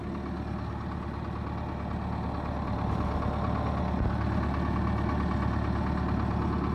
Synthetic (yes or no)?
no